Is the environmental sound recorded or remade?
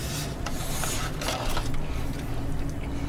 recorded